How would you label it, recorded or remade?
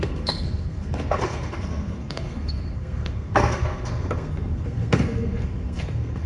remade